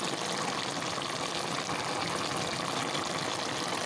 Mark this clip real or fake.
real